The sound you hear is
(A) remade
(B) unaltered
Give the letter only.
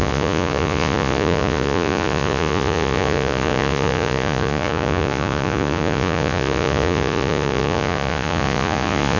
A